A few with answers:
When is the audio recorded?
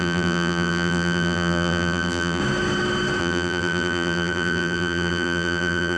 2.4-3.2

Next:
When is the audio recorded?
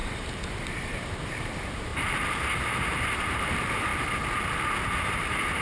3.9-5.1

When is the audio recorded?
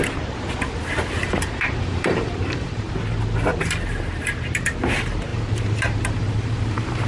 0.0-1.2; 2.9-5.3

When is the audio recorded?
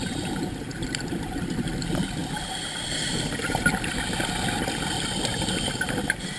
0.0-6.4